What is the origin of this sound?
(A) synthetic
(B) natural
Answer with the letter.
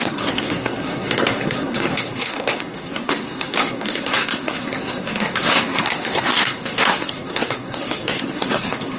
A